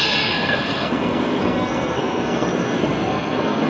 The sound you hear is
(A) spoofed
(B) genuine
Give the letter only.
A